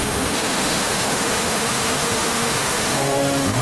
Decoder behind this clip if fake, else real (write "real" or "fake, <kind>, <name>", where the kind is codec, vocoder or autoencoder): fake, autoencoder, DAC-VAE